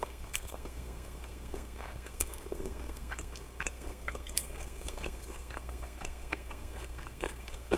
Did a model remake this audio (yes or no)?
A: yes